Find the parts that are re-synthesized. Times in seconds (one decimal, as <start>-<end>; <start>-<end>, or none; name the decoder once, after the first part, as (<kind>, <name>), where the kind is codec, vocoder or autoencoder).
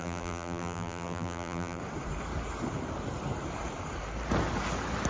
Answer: 0.0-1.8 (vocoder, BigVGAN v2)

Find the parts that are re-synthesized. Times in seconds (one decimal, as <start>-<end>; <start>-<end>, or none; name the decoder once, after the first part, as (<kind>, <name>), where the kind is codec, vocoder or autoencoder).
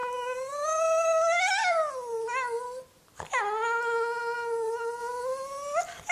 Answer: none